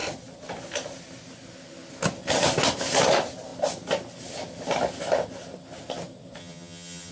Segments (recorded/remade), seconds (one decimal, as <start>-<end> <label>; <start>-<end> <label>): 0.0-6.4 recorded; 6.4-7.1 remade